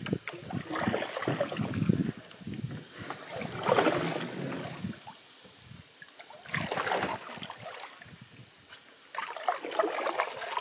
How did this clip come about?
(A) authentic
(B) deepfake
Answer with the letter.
A